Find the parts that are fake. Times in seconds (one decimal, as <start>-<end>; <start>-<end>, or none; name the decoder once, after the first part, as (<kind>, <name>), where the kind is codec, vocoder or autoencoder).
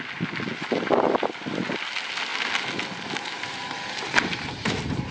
none